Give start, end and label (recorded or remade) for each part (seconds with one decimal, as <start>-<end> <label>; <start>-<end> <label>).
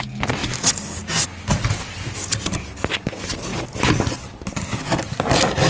0.0-5.7 recorded